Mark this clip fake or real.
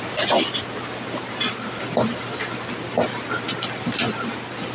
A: real